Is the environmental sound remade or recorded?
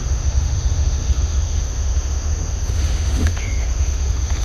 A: remade